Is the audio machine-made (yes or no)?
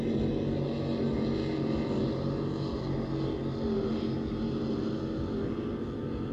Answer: no